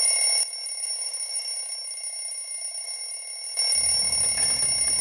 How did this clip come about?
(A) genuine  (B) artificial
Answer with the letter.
A